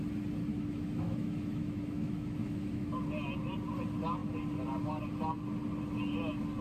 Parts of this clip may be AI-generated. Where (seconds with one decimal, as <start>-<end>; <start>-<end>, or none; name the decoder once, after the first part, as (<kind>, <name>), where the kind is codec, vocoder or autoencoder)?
0.5-3.0 (autoencoder, DAC-VAE)